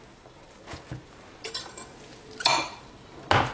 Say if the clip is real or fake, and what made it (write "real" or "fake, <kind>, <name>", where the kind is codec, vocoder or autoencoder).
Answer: real